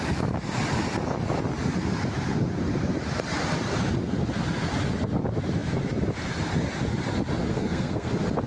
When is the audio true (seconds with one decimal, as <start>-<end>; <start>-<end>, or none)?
0.0-7.5; 8.1-8.5